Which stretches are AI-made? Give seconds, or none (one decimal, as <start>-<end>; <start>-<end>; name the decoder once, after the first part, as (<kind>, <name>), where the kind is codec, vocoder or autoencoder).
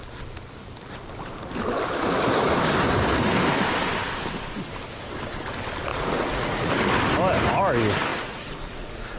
5.9-6.7 (vocoder, Vocos); 8.1-9.2